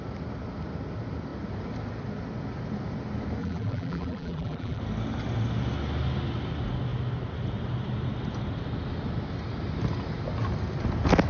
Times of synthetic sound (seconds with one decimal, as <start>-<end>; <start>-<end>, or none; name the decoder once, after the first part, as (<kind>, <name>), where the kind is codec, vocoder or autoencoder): 3.4-4.8 (vocoder, BigVGAN v2)